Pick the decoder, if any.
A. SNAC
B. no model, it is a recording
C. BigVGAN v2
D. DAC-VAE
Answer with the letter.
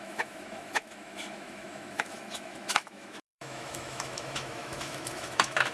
D